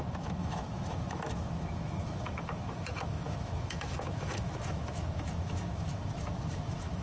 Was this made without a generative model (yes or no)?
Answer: no